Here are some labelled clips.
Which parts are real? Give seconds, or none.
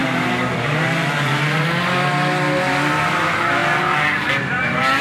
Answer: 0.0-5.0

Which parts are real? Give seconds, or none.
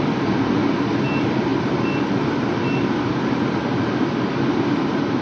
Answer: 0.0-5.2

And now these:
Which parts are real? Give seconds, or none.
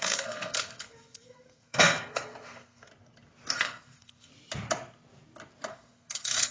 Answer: 2.9-3.5; 4.3-5.7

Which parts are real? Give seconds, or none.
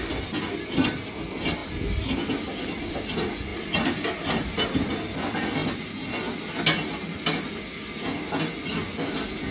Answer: 0.0-9.5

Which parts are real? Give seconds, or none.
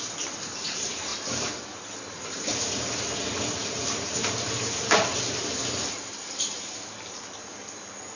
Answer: none